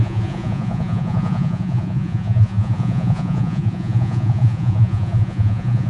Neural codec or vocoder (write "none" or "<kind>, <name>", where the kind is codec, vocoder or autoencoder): vocoder, Vocos